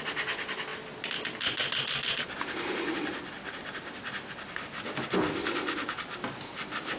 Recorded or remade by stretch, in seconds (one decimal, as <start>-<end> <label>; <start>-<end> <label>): 0.0-7.0 recorded